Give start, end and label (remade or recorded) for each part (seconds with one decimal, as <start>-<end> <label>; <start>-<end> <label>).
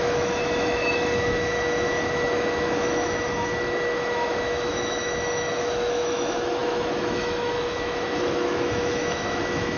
0.0-9.8 remade